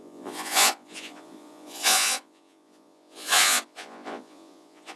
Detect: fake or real fake